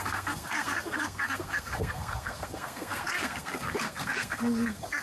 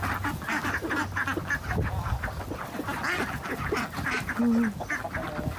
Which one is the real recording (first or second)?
second